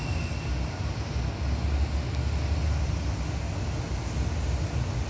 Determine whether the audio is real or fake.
real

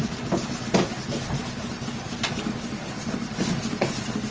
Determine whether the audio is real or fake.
real